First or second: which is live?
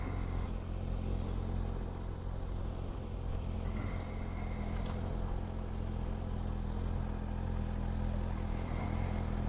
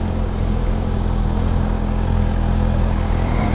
first